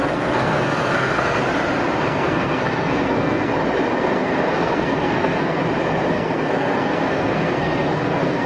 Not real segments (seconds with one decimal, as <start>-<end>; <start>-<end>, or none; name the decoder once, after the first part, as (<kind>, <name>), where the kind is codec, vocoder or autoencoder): 0.0-1.4 (codec, SNAC); 2.0-3.5; 4.0-5.6; 6.1-8.5